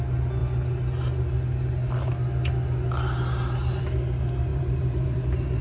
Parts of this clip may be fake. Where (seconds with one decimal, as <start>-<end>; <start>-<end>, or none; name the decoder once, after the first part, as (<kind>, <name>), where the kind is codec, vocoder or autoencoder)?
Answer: 4.5-5.6 (vocoder, BigVGAN v2)